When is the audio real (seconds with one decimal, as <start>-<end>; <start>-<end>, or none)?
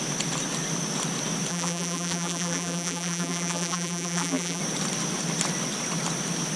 0.0-1.5; 4.6-6.6